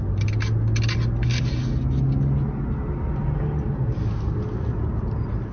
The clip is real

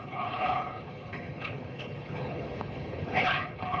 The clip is fake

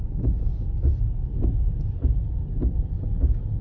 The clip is real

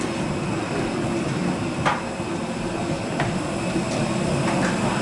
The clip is real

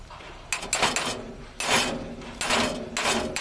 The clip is real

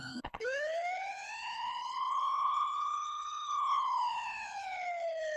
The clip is fake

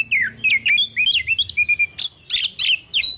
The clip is real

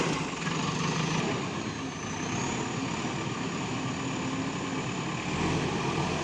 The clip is real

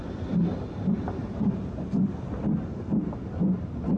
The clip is real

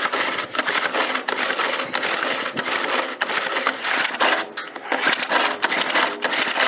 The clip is real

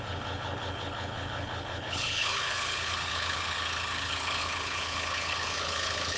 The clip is fake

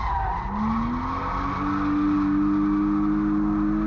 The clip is real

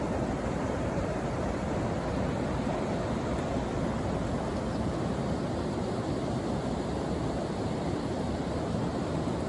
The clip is real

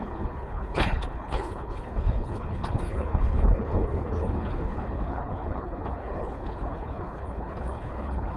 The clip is fake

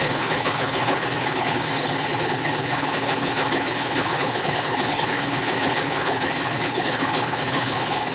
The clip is fake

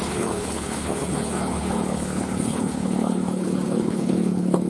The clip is fake